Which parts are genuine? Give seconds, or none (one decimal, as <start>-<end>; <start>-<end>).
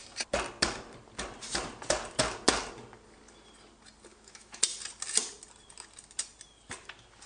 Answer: 0.0-4.1; 4.6-7.3